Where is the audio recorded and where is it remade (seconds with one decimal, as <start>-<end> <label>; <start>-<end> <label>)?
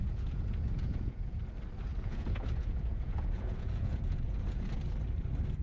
0.0-1.4 remade; 1.4-1.9 recorded; 1.9-4.7 remade; 4.7-5.6 recorded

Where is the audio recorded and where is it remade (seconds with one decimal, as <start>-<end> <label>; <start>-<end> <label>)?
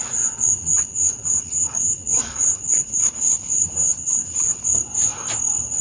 0.0-4.5 remade; 4.5-5.8 recorded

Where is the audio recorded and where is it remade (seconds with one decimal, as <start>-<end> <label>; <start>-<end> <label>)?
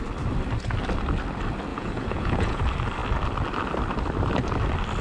0.0-1.7 recorded; 1.7-2.6 remade; 2.6-5.0 recorded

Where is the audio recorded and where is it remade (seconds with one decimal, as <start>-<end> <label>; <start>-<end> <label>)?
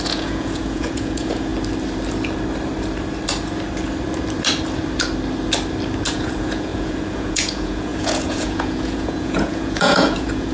0.0-1.5 remade; 1.5-6.1 recorded; 6.1-10.5 remade